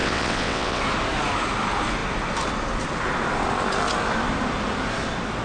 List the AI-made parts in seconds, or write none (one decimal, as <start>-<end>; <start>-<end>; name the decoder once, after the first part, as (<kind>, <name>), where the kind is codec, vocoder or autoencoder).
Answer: 0.0-0.8 (vocoder, WaveNeXt)